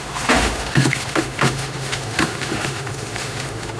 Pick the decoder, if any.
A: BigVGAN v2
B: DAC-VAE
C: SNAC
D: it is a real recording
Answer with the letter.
B